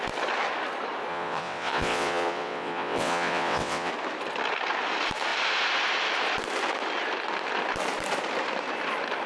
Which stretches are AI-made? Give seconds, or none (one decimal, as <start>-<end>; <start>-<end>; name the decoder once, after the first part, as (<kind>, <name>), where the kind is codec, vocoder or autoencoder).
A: 1.1-3.9 (vocoder, WaveNeXt)